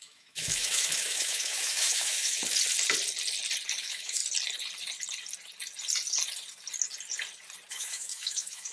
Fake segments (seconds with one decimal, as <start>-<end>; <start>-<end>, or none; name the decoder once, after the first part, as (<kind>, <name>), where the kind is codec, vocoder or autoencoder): 0.0-2.4 (autoencoder, DAC-VAE); 3.8-4.2; 7.7-8.7

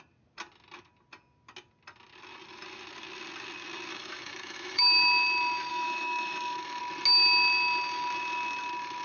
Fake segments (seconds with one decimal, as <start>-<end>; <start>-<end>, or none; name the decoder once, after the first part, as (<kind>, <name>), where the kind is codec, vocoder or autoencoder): 3.9-4.8 (autoencoder, DAC-VAE); 5.7-6.8

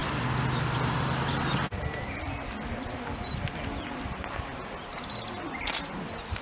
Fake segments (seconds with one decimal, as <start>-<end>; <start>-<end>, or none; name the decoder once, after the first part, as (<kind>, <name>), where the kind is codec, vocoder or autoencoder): none

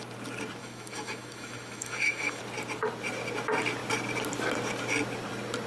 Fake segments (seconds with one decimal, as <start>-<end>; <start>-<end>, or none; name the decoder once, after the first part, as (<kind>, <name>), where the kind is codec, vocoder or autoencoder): 0.6-2.4 (autoencoder, DAC-VAE)

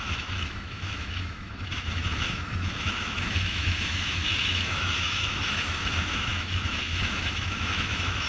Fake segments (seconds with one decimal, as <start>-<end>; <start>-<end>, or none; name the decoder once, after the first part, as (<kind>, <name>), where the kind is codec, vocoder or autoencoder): 0.0-8.3 (autoencoder, DAC-VAE)